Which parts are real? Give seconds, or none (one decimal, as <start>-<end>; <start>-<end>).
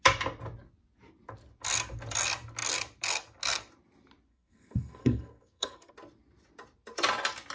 0.0-4.3; 5.9-7.5